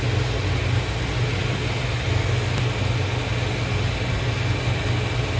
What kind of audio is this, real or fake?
real